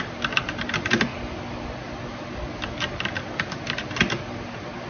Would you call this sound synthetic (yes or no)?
no